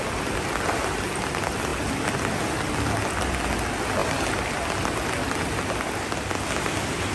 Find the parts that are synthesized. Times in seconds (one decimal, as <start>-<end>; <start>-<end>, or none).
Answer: none